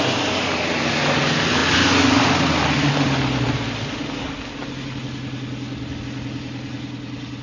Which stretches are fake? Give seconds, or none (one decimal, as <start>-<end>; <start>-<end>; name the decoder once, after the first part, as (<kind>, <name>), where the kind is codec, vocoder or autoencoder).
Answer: none